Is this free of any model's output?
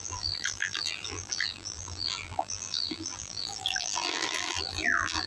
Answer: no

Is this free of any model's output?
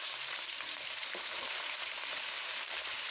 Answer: no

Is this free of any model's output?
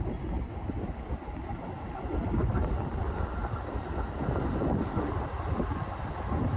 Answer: yes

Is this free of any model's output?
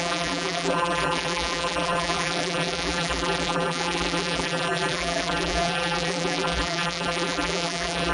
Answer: no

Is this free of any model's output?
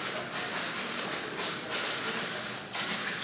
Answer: yes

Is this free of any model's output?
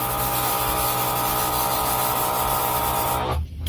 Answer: yes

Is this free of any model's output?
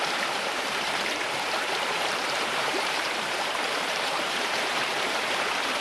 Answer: no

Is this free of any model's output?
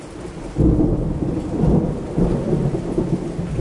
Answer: yes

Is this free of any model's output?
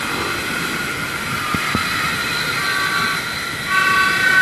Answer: yes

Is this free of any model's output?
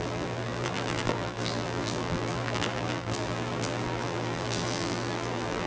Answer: no